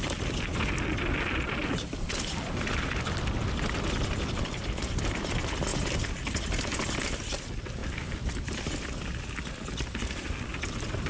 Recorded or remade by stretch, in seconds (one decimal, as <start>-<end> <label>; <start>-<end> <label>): 0.0-5.7 recorded; 5.7-7.0 remade; 7.0-7.8 recorded; 7.8-8.6 remade; 8.6-11.1 recorded